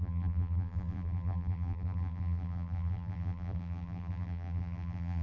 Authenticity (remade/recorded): remade